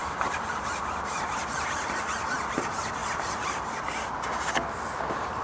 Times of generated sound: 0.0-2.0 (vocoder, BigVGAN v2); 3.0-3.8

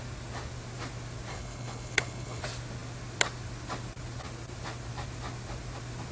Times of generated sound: 1.3-2.4 (codec, HILCodec)

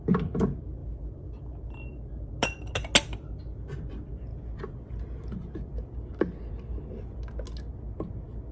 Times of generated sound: none

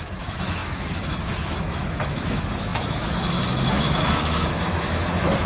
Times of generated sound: 0.0-5.5 (autoencoder, DAC-VAE)